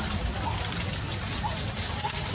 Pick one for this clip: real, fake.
real